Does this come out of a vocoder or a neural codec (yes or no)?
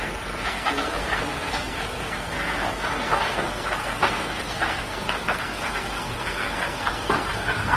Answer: yes